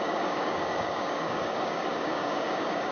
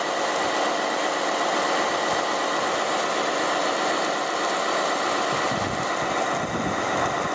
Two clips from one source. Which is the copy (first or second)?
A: first